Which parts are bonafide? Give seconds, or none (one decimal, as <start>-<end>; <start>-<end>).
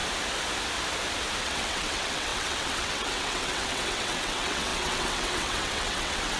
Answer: 0.0-1.4